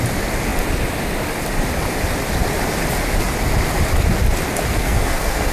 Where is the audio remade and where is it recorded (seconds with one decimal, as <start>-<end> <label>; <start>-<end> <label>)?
0.0-4.7 recorded; 4.7-5.5 remade